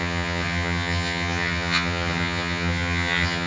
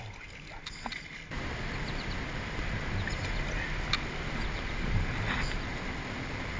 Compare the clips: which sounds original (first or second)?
second